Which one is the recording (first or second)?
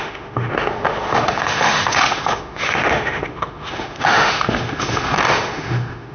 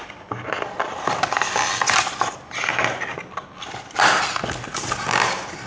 second